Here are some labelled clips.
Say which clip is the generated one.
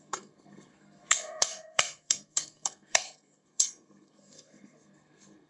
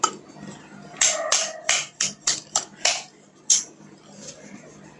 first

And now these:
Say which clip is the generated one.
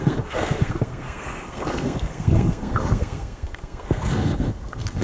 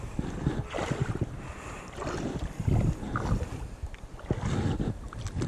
first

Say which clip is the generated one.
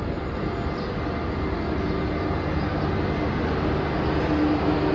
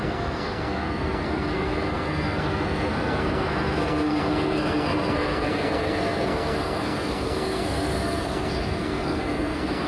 second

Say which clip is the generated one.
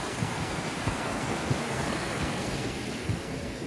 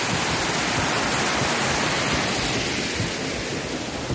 first